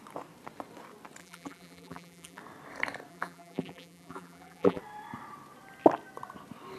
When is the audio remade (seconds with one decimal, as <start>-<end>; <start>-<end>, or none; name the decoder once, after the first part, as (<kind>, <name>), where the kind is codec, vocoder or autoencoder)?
1.2-2.4 (vocoder, BigVGAN v2); 3.1-4.8